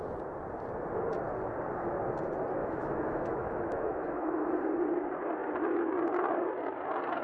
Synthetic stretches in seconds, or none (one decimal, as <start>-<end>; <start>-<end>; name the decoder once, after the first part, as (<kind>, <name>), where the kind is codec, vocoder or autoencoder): 2.6-4.7 (autoencoder, DAC-VAE)